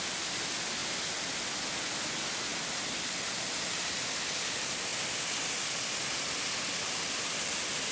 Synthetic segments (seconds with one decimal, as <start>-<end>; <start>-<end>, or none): none